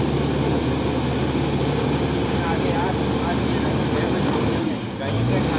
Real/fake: real